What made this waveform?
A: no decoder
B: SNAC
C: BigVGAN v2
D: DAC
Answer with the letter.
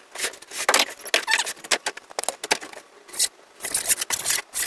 A